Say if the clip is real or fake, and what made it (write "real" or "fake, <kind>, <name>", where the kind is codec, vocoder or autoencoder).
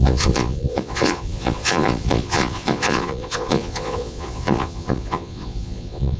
fake, vocoder, Vocos